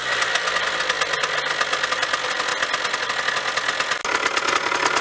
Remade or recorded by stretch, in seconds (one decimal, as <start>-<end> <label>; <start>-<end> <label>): 0.0-5.0 recorded